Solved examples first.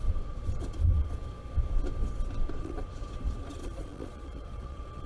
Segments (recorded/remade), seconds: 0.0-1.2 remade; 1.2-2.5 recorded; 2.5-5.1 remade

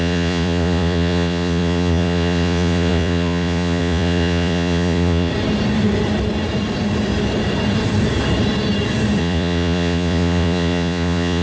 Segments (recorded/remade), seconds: 0.0-5.3 remade; 5.3-9.2 recorded; 9.2-11.4 remade

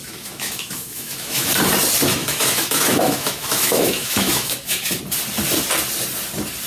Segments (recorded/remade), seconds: 0.0-1.5 remade; 1.5-2.2 recorded; 2.2-5.0 remade; 5.0-6.7 recorded

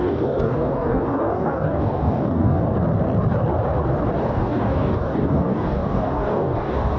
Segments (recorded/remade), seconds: 0.0-2.6 remade; 2.6-4.2 recorded; 4.2-7.0 remade

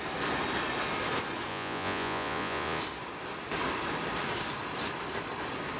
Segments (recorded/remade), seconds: 0.0-1.5 recorded; 1.5-2.8 remade; 2.8-5.8 recorded